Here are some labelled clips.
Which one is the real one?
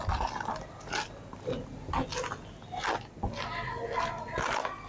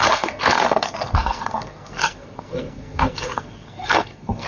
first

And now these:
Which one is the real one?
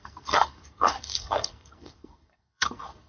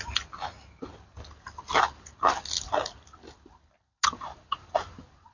second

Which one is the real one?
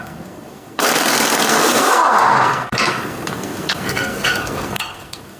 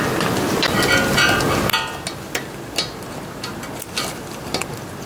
second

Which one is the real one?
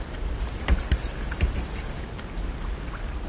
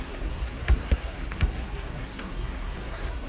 first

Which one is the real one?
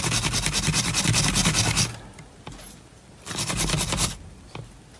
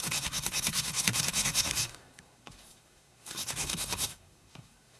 first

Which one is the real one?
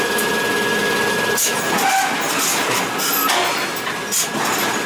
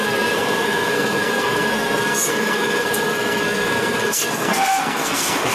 first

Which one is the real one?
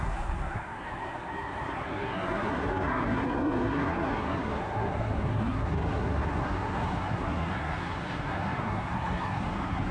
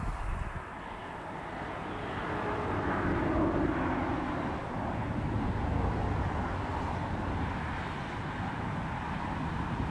second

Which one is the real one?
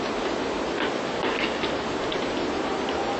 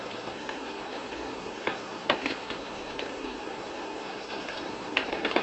first